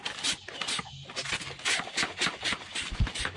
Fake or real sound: real